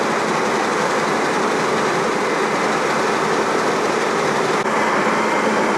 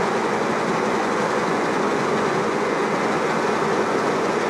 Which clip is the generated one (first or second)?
second